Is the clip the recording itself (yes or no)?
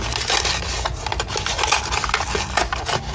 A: yes